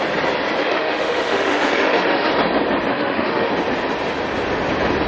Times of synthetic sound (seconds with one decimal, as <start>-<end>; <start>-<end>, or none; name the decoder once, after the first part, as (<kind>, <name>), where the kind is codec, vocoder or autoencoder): 0.6-2.3 (autoencoder, DAC-VAE); 2.9-3.5